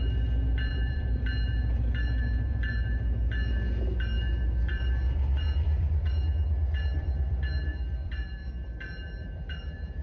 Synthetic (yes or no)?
yes